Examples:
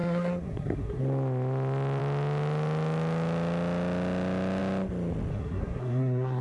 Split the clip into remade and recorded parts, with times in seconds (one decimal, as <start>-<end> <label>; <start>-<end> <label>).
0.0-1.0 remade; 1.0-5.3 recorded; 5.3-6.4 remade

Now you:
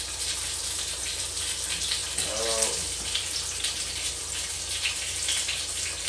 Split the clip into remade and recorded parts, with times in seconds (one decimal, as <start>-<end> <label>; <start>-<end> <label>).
0.0-6.1 recorded

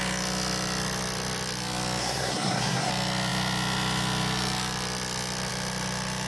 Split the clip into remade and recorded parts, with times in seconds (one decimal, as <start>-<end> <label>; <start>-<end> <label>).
0.0-2.0 recorded; 2.0-2.9 remade; 2.9-6.3 recorded